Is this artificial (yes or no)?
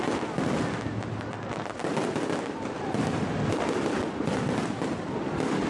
no